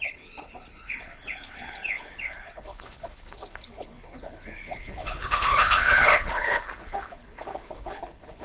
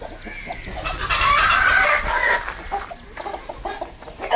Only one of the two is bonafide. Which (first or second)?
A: second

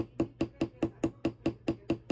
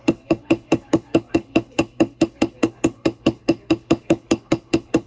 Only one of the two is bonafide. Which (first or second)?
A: first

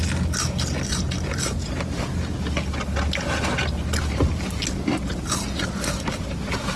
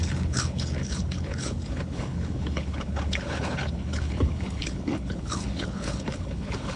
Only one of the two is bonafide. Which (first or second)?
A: first